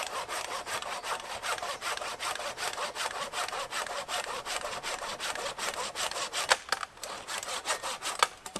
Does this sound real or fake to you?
real